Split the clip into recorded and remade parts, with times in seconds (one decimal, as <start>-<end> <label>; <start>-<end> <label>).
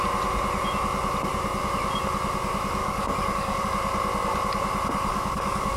0.0-2.8 recorded; 2.8-3.6 remade; 3.6-5.1 recorded; 5.1-5.8 remade